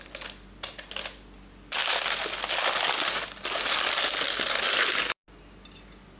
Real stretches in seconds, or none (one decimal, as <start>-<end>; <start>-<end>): 0.0-6.2